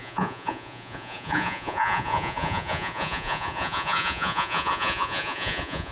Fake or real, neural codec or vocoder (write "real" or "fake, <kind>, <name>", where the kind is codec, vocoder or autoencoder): fake, vocoder, Vocos